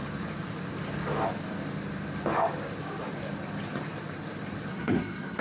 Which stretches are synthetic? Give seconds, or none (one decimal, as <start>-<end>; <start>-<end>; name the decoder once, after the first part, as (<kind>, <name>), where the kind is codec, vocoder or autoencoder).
4.7-5.4 (codec, SNAC)